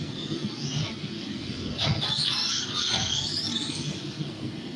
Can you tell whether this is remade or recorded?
remade